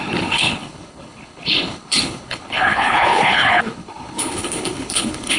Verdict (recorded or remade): remade